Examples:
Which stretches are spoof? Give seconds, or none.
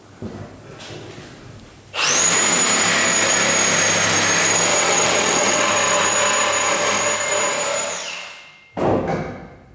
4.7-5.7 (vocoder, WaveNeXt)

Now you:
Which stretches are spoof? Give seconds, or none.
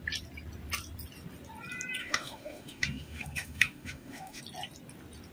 2.0-4.4 (autoencoder, DAC-VAE)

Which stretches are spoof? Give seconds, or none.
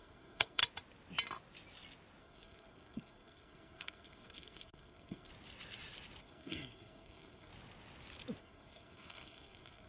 0.0-0.6 (codec, SNAC); 2.2-5.3; 6.2-7.5; 8.4-9.9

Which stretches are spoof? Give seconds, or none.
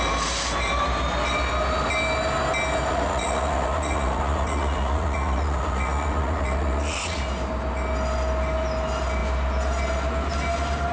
2.9-7.2 (vocoder, Vocos)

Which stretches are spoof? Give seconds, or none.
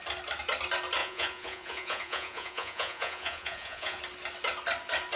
1.0-4.0 (vocoder, Vocos)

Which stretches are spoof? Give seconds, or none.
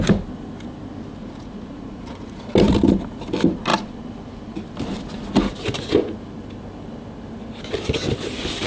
1.2-2.4 (vocoder, Vocos)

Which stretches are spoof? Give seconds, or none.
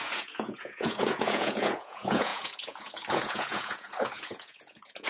0.0-5.1 (vocoder, Vocos)